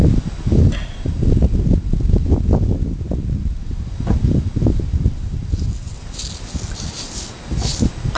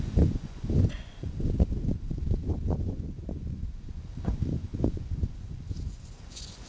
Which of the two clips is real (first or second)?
first